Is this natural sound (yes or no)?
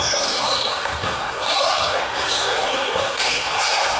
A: no